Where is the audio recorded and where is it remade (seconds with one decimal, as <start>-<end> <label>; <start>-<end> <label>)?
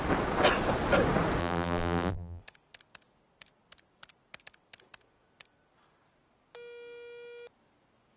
0.0-1.4 recorded; 1.4-2.4 remade; 2.4-8.2 recorded